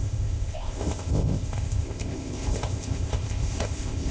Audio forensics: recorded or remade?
remade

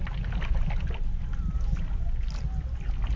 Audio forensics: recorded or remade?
recorded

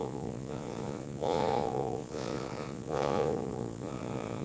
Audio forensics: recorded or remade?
remade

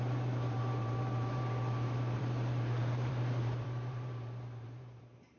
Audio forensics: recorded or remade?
remade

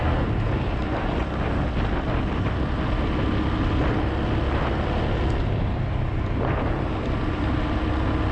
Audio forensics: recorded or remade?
recorded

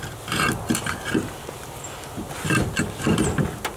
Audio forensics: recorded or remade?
recorded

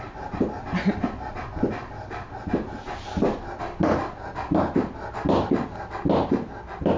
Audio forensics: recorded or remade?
recorded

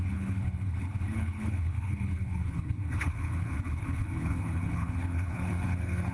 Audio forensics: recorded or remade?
remade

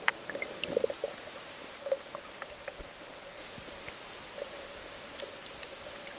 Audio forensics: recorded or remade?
recorded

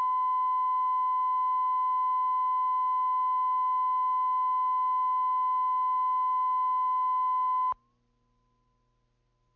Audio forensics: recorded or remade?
recorded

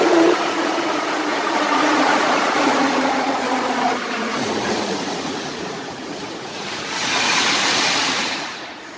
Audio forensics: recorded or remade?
remade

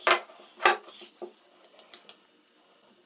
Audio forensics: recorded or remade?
recorded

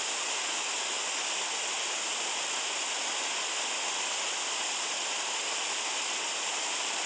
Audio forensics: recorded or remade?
recorded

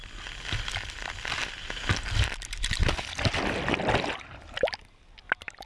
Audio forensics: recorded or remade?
recorded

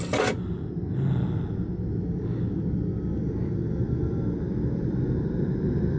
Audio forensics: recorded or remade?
recorded